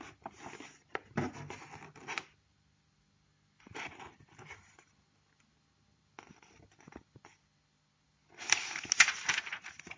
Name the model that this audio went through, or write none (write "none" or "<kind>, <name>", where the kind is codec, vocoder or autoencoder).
none